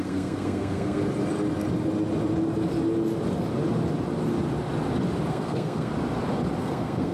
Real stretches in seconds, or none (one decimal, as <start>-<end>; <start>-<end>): 1.0-5.3; 5.9-6.6